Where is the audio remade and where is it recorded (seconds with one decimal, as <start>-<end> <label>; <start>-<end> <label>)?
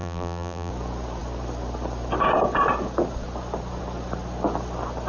0.0-0.7 remade; 0.7-5.1 recorded